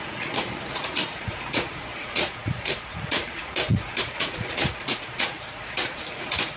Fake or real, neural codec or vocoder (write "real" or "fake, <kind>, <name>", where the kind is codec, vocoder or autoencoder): fake, vocoder, Vocos